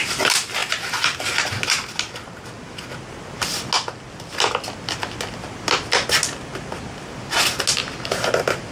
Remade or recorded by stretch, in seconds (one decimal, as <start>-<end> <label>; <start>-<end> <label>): 0.0-8.7 recorded